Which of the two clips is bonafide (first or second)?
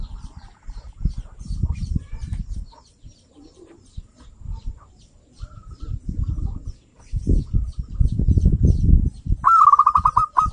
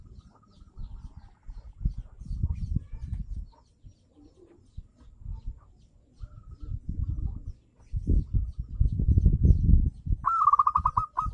second